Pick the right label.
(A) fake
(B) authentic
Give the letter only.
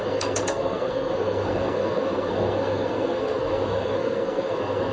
A